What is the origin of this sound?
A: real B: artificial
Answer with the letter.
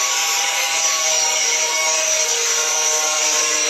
B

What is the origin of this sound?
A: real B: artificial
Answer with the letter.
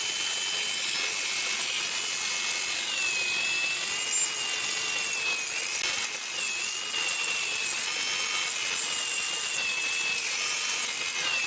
A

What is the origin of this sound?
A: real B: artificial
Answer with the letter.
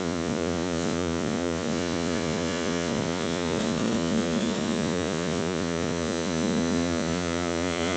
B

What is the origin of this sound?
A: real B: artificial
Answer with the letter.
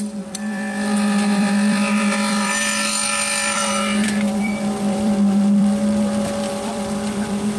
B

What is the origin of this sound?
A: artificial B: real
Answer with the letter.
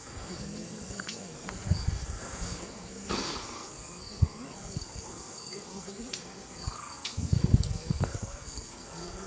A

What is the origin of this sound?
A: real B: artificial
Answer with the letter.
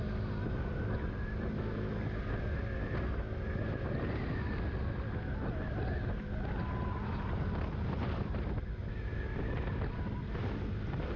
A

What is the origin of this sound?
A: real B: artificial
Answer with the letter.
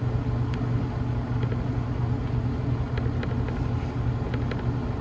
A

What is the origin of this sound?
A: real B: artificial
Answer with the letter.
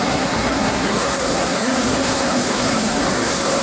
B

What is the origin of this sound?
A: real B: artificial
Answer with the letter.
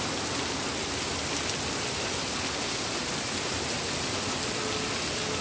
A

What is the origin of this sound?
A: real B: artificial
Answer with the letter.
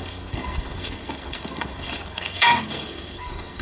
B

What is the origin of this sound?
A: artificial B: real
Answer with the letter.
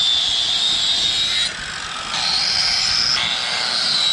B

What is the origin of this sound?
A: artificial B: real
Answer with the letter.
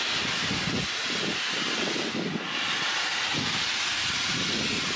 B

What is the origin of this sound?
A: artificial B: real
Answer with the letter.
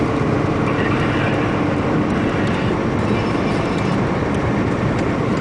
B